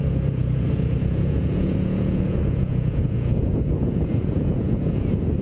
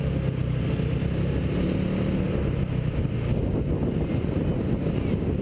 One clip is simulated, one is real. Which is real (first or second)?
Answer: second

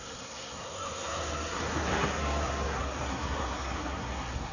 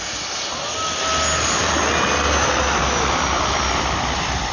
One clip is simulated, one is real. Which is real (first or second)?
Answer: second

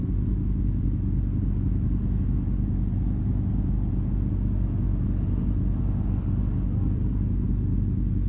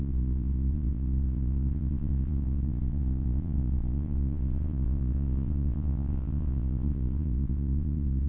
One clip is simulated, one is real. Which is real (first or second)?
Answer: first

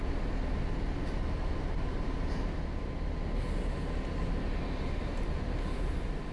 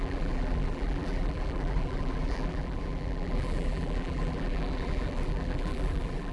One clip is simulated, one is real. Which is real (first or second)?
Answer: first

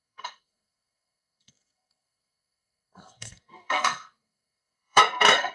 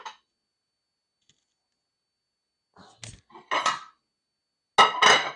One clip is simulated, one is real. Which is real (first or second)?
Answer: second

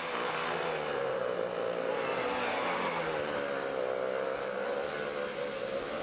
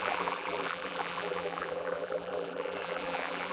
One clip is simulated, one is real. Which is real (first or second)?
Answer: first